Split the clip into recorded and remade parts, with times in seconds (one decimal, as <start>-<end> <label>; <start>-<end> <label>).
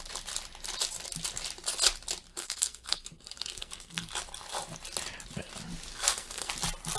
0.0-2.3 recorded; 2.3-4.1 remade; 4.1-5.9 recorded; 5.9-6.5 remade; 6.5-7.0 recorded